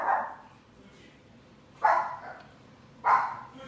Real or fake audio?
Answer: real